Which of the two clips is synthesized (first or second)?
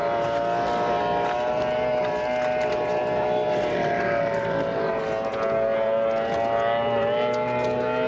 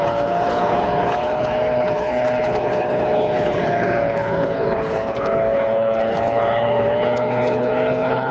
second